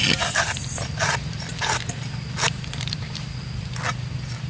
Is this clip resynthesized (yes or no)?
yes